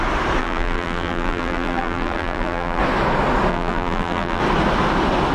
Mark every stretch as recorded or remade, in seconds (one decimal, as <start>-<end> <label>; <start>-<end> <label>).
0.0-0.4 recorded; 0.4-2.8 remade; 2.8-3.5 recorded; 3.5-4.4 remade; 4.4-5.3 recorded